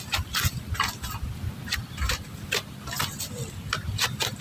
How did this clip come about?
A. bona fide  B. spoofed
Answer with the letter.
A